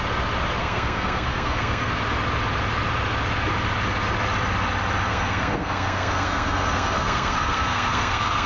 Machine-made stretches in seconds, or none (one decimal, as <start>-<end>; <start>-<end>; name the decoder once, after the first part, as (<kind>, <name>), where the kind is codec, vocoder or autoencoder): 0.6-1.9 (codec, SNAC); 5.1-8.5